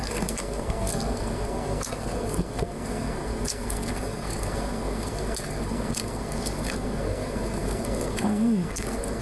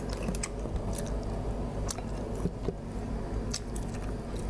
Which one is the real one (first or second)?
second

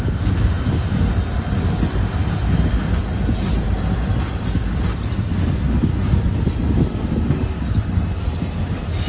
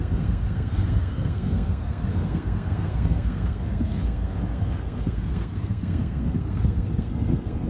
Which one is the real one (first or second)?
first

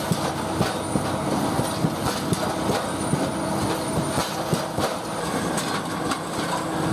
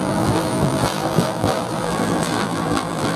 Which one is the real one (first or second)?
first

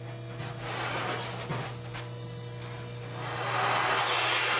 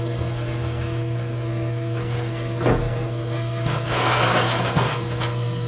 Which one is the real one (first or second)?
first